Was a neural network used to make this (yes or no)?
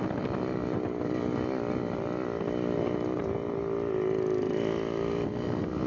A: no